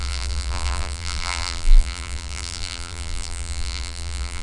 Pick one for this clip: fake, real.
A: fake